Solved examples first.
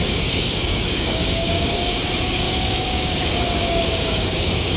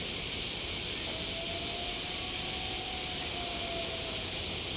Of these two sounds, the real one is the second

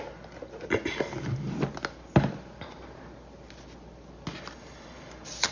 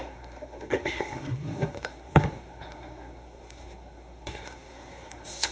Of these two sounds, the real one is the first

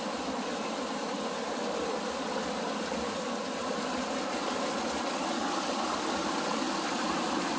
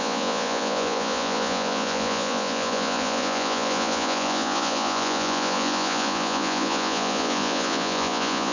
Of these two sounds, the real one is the first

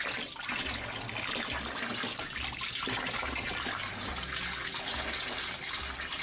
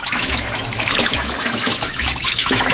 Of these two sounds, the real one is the first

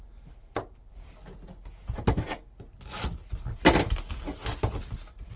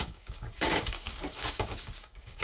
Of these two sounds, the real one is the first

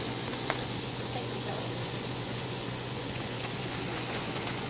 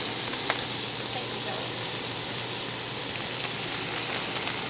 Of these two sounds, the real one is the second